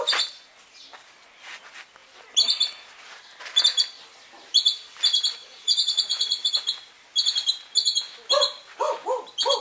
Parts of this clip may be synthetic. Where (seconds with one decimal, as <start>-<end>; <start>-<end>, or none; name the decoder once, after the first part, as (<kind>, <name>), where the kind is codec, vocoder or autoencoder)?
5.4-6.5 (vocoder, Vocos)